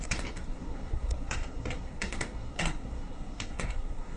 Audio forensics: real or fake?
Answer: fake